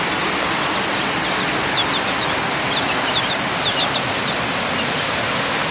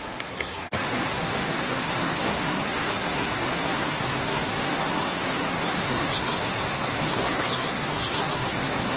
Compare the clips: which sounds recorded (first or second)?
first